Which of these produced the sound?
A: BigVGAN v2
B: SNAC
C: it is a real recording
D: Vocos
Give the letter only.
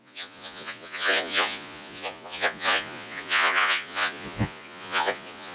D